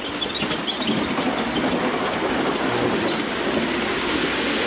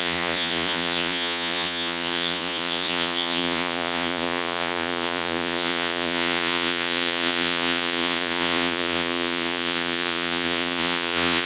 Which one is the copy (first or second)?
second